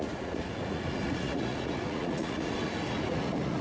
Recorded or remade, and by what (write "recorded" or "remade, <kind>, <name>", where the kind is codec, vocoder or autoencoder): remade, vocoder, Vocos